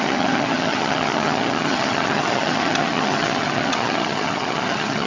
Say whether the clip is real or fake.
fake